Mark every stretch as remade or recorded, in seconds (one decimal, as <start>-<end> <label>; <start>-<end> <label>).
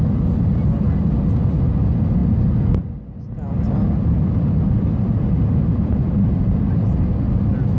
0.0-5.0 recorded; 5.0-6.4 remade; 6.4-7.8 recorded